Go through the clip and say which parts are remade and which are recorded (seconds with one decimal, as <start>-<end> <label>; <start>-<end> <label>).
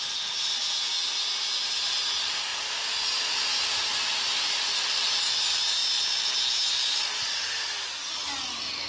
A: 0.0-5.8 remade; 5.8-6.7 recorded; 6.7-8.9 remade